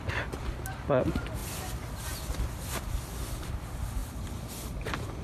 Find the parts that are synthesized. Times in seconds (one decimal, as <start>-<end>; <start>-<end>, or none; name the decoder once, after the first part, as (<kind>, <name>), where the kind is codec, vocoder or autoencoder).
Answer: 1.4-3.6 (vocoder, BigVGAN v2)